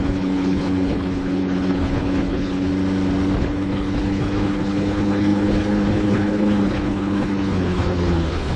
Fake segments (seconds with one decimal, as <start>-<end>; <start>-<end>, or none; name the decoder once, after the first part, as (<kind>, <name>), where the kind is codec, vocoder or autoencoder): 0.0-2.7 (codec, HILCodec); 3.4-8.6